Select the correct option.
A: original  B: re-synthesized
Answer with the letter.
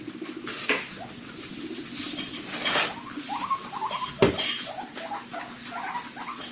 A